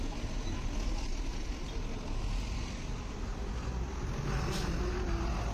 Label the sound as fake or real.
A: real